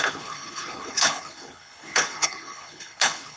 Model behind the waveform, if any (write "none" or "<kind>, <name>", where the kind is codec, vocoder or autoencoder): codec, HILCodec